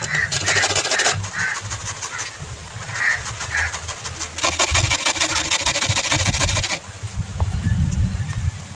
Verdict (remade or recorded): recorded